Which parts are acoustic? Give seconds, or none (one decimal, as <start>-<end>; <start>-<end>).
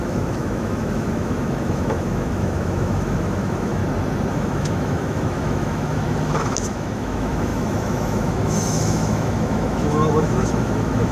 3.8-4.3